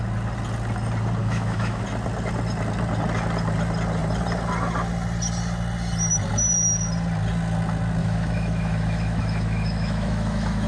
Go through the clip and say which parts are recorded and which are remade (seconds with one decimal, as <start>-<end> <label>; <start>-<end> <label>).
0.0-1.2 recorded; 1.2-1.8 remade; 1.8-8.0 recorded; 8.0-10.7 remade